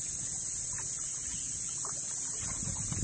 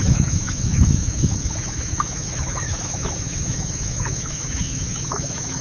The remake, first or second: second